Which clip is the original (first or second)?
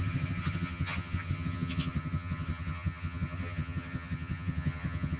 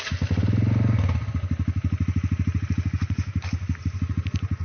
second